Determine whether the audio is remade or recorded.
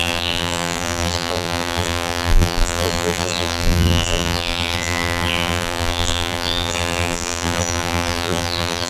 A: remade